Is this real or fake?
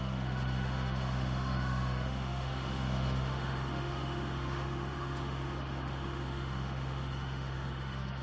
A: fake